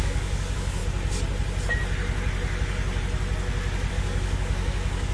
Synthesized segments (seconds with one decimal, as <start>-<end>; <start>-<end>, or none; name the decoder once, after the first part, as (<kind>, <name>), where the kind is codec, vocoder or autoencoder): 0.0-0.8 (codec, DAC); 3.9-5.1